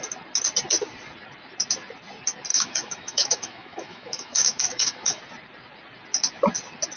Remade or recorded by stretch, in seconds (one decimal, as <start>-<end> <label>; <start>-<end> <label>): 0.0-2.5 recorded; 2.5-5.2 remade; 5.2-7.0 recorded